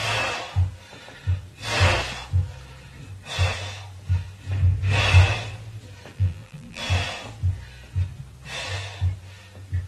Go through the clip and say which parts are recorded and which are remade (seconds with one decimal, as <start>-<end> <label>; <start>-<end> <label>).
0.0-6.1 recorded; 6.1-6.8 remade; 6.8-9.9 recorded